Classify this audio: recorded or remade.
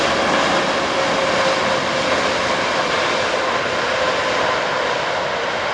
recorded